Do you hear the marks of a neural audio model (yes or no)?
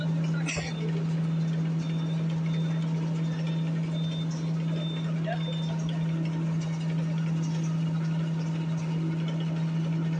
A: no